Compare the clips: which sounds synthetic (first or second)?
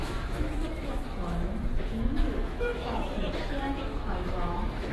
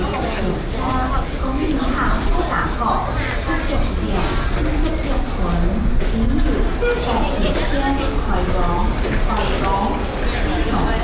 first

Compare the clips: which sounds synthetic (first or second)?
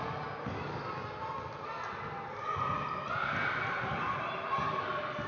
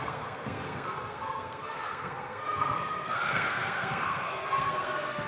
second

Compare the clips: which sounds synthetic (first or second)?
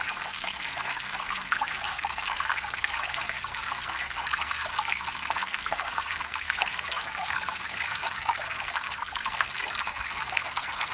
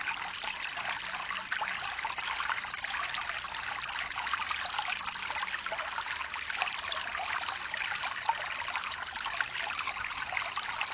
first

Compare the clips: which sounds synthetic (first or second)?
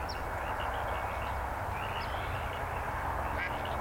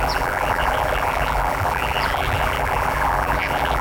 second